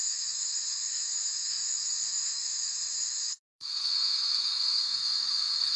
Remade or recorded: remade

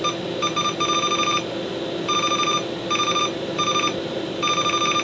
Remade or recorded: recorded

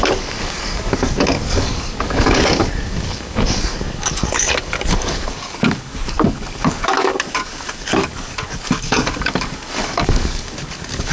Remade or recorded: remade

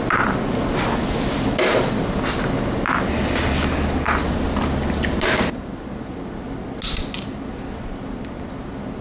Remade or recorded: recorded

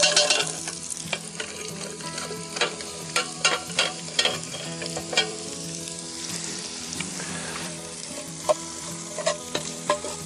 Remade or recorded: remade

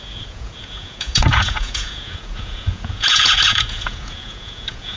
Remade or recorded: remade